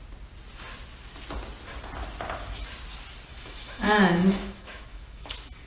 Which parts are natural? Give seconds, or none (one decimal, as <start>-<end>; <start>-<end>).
0.0-3.3; 5.3-5.7